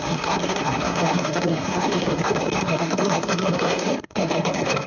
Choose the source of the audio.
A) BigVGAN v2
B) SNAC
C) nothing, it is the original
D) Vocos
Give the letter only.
B